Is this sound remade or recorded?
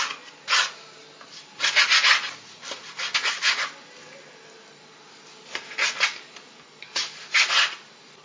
recorded